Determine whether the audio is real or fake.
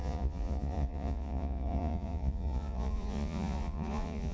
fake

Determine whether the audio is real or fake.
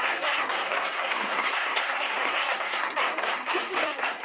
fake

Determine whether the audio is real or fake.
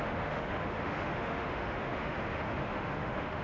fake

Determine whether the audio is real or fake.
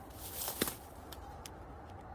real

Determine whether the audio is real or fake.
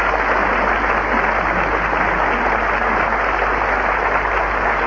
real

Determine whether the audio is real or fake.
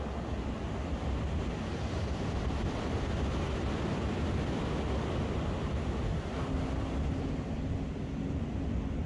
real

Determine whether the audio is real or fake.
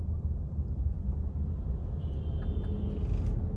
real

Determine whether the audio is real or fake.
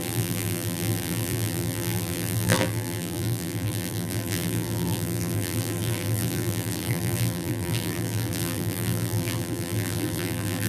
fake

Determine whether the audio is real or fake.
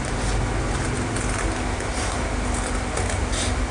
real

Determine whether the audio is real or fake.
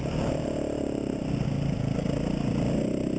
real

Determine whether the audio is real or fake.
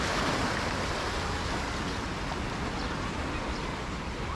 real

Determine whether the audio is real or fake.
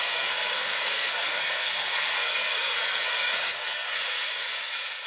fake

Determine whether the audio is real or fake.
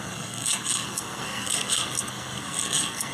fake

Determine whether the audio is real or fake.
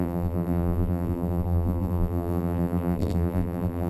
fake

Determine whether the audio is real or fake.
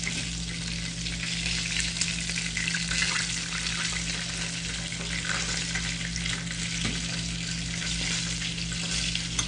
real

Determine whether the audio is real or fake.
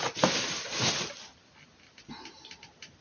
real